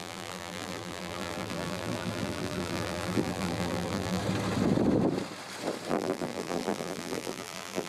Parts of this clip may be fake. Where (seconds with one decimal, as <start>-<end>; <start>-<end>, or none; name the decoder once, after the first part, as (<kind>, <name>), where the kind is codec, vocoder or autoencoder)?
0.0-4.2 (vocoder, BigVGAN v2); 5.9-7.9